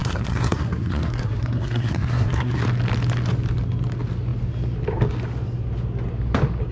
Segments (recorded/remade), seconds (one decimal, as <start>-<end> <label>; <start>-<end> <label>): 0.0-2.6 remade; 2.6-6.7 recorded